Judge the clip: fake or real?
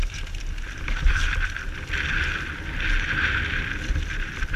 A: fake